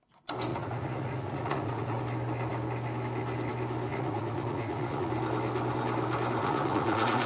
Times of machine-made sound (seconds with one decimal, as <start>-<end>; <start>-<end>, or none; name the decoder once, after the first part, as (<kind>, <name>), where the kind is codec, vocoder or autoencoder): 0.5-2.0 (vocoder, Vocos); 3.9-5.1; 6.4-7.3